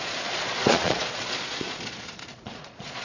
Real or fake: fake